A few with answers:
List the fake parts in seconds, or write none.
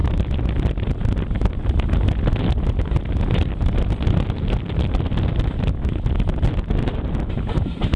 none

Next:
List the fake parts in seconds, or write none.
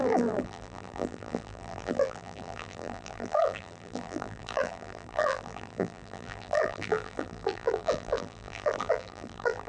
0.0-9.7 (vocoder, BigVGAN v2)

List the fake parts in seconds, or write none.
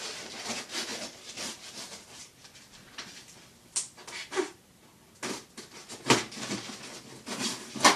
0.9-2.0 (vocoder, BigVGAN v2); 2.4-4.8